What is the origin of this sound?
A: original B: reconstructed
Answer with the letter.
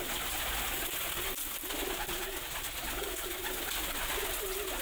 A